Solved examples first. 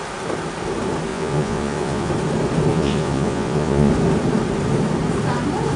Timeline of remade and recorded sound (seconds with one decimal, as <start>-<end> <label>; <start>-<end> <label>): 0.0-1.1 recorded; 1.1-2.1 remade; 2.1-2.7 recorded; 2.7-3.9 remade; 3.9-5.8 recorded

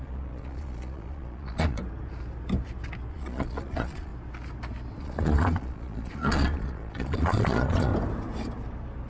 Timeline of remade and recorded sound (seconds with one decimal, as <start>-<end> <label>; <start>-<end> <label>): 0.0-1.8 remade; 1.8-3.1 recorded; 3.1-4.1 remade; 4.1-5.0 recorded; 5.0-7.9 remade; 7.9-9.1 recorded

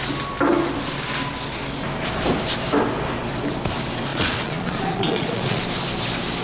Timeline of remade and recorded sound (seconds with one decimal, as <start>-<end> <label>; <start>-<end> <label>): 0.0-4.1 recorded; 4.1-5.6 remade; 5.6-6.4 recorded

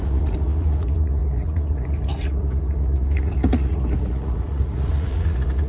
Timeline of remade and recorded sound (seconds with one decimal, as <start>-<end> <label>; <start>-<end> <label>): 0.0-5.7 remade